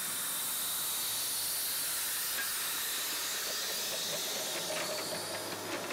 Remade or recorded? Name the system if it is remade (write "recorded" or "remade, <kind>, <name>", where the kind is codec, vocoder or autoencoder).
recorded